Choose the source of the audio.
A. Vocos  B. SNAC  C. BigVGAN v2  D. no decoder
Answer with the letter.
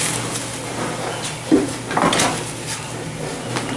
D